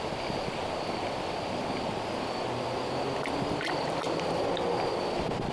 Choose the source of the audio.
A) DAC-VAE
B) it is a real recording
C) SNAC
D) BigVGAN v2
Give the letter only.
B